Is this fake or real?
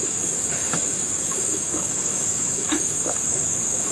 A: fake